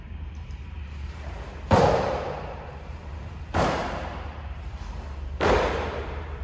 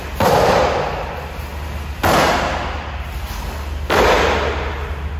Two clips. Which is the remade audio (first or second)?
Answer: first